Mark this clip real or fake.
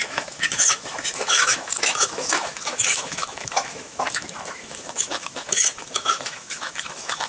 fake